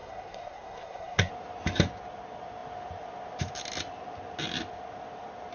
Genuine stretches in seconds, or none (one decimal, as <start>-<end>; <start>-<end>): 1.3-5.5